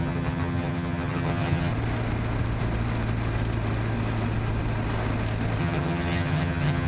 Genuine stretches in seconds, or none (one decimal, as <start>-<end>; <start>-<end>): 1.7-5.6